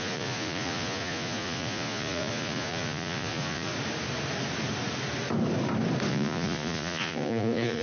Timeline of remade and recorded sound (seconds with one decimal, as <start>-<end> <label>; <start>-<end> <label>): 0.0-3.7 remade; 3.7-6.1 recorded; 6.1-7.8 remade